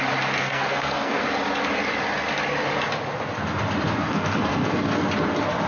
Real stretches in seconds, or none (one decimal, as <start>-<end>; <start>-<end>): 0.0-0.4; 1.2-4.0; 4.9-5.7